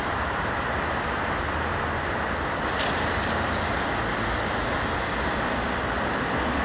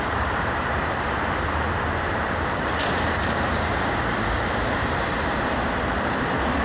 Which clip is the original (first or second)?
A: first